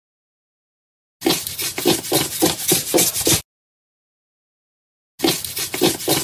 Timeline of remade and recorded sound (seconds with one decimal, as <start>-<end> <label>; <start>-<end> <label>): 0.0-6.2 recorded